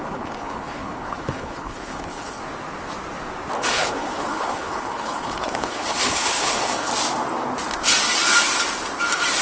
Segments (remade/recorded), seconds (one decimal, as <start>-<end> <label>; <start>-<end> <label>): 0.0-2.4 remade; 2.4-3.6 recorded; 3.6-6.9 remade; 6.9-9.4 recorded